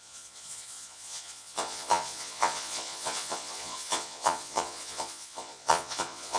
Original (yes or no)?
no